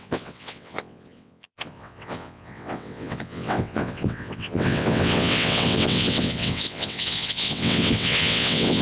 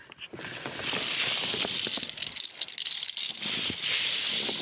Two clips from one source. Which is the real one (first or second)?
second